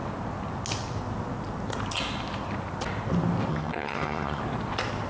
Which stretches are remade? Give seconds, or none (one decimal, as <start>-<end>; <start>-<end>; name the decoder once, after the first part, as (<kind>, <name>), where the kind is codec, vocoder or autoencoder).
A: 3.5-4.4 (vocoder, HiFi-GAN)